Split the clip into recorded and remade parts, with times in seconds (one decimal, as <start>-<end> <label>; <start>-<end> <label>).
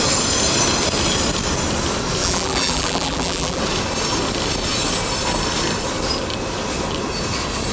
0.0-2.2 recorded; 2.2-3.6 remade; 3.6-7.7 recorded